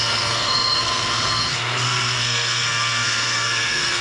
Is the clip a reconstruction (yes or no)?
yes